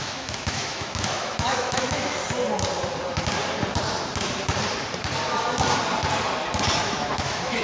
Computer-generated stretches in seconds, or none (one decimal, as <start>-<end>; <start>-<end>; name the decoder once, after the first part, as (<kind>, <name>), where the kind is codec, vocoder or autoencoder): 0.0-2.2 (autoencoder, DAC-VAE); 6.8-7.6